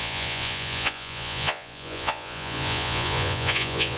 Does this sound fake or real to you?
fake